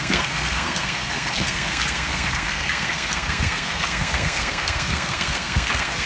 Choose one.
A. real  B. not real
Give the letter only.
B